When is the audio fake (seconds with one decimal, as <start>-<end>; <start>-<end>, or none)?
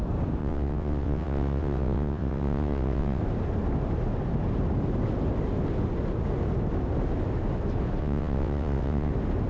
0.4-3.2; 8.0-9.1